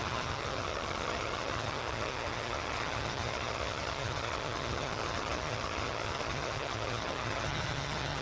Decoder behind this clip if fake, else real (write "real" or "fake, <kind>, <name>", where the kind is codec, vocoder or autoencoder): fake, vocoder, HiFi-GAN